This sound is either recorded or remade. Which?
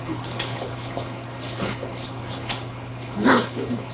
remade